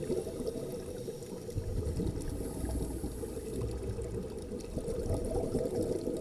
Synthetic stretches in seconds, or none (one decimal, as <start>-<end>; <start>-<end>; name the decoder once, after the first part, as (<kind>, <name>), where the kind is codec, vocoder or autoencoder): 5.2-6.2 (vocoder, BigVGAN v2)